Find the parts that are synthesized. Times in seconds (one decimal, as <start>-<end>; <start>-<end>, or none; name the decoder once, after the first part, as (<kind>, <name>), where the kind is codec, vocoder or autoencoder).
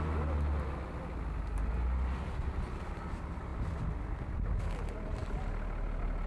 none